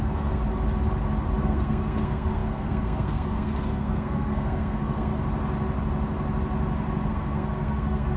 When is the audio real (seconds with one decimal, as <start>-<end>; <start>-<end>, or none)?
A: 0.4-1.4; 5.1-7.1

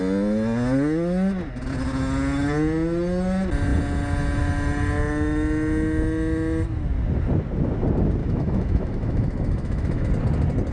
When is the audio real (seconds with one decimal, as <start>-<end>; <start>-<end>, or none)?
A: 0.0-8.2; 10.1-10.7

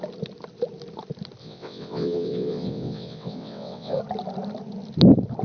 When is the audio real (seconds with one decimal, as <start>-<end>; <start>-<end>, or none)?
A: 0.0-1.4; 4.0-5.4

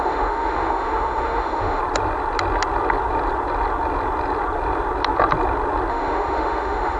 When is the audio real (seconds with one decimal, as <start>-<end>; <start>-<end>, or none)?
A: 1.8-5.9

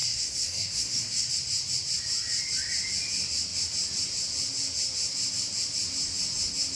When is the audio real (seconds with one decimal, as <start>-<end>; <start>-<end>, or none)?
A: 1.3-6.7

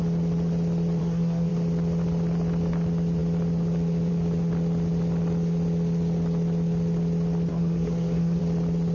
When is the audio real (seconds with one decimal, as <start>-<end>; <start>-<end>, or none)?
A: 0.0-1.0; 1.5-7.5; 8.4-8.9

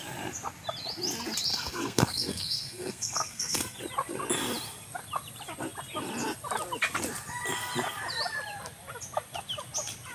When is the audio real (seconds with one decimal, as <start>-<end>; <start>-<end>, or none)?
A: 0.0-1.5; 3.8-10.1

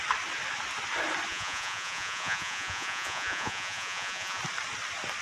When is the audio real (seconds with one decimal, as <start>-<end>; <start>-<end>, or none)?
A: 0.0-1.3; 4.4-5.2